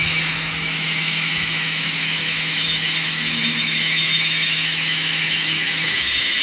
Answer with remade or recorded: remade